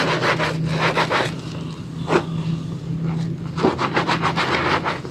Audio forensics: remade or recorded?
recorded